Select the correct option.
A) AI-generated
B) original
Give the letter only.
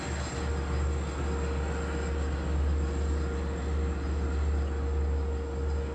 B